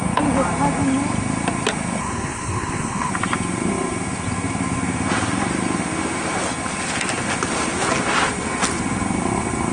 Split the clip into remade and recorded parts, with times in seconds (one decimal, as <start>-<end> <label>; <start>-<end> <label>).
0.0-2.0 recorded; 2.0-3.1 remade; 3.1-9.7 recorded